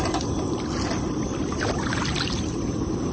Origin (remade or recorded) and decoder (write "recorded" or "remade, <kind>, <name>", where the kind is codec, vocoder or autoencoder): remade, vocoder, BigVGAN v2